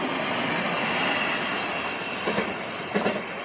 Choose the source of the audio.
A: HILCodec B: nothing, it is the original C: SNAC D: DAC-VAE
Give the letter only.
B